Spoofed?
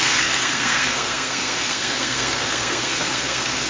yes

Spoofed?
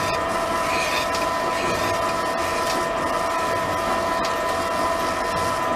no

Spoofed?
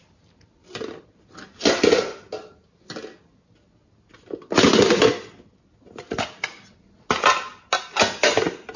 no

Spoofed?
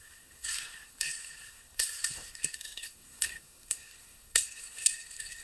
yes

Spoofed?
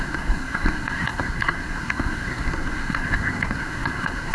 yes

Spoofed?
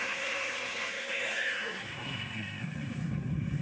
yes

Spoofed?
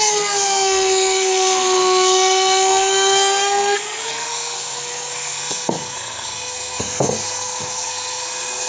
yes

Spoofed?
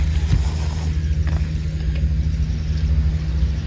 no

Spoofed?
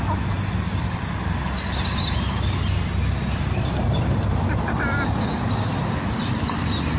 no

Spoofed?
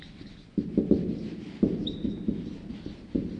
no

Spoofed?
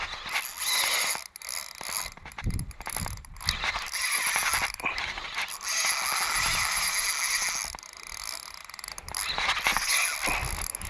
no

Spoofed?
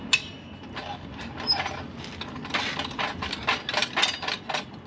no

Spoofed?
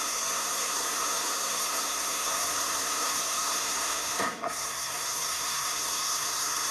yes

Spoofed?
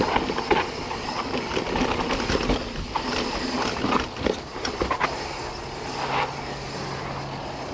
no